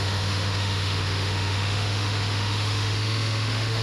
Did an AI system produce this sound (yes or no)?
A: yes